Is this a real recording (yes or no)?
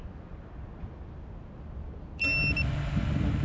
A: yes